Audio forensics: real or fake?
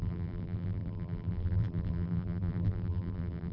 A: fake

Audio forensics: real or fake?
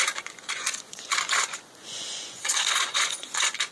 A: fake